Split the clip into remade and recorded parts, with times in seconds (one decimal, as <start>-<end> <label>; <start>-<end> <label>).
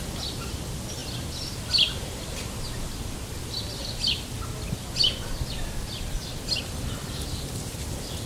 0.0-8.3 recorded